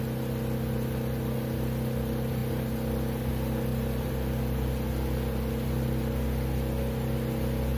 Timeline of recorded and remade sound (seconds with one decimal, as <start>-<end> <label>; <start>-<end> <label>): 0.0-7.8 recorded

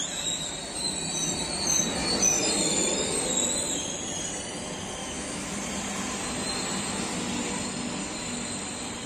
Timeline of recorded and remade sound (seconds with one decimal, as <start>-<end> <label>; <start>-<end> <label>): 0.0-5.0 recorded; 5.0-5.6 remade; 5.6-9.1 recorded